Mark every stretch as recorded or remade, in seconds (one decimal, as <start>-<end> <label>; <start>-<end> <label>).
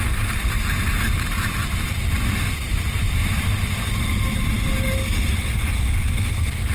0.0-3.2 remade; 3.2-6.0 recorded; 6.0-6.7 remade